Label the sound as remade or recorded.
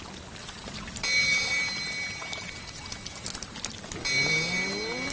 recorded